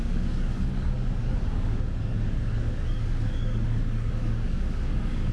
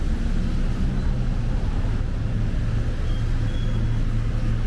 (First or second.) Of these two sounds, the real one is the second